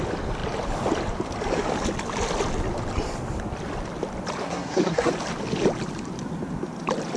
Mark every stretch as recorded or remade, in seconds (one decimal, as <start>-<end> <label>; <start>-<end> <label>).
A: 0.0-4.4 recorded; 4.4-5.1 remade; 5.1-7.2 recorded

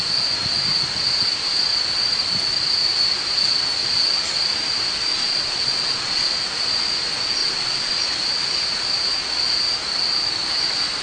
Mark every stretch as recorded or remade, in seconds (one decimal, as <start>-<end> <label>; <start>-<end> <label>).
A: 0.0-5.1 recorded; 5.1-6.3 remade; 6.3-7.4 recorded; 7.4-7.9 remade; 7.9-11.0 recorded

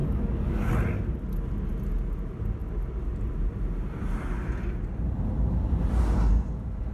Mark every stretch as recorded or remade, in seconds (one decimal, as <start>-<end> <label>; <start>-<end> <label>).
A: 0.0-0.7 remade; 0.7-6.9 recorded

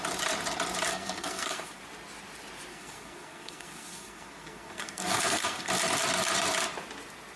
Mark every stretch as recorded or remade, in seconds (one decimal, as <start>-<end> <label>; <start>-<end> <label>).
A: 0.0-0.9 recorded; 0.9-1.8 remade; 1.8-2.7 recorded; 2.7-5.7 remade; 5.7-7.4 recorded

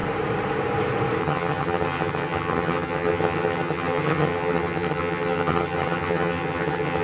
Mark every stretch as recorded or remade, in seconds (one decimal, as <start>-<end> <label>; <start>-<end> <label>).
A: 0.0-1.2 recorded; 1.2-7.0 remade

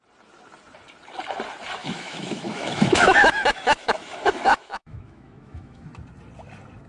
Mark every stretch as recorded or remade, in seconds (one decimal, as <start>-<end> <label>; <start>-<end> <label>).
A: 0.0-1.8 recorded; 1.8-5.9 remade; 5.9-6.9 recorded

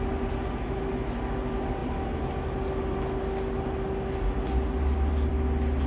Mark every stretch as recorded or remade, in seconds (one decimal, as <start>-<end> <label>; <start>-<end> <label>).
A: 0.0-5.9 recorded